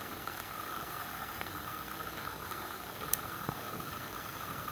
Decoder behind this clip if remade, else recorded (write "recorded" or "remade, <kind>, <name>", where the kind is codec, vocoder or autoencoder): remade, codec, SNAC